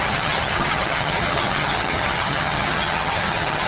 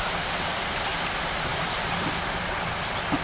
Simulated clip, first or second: first